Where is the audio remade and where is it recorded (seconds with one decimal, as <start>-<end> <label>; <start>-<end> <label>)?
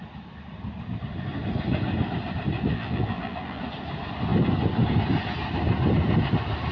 0.0-2.7 recorded; 2.7-3.6 remade; 3.6-6.7 recorded